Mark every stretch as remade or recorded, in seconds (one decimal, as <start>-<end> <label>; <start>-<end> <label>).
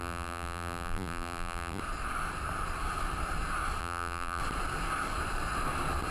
0.0-1.8 remade; 1.8-3.8 recorded; 3.8-4.4 remade; 4.4-6.1 recorded